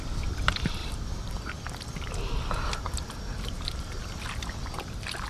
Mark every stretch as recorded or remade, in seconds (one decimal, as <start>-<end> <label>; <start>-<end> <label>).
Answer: 0.0-0.8 recorded; 0.8-1.4 remade; 1.4-3.3 recorded; 3.3-4.0 remade; 4.0-5.3 recorded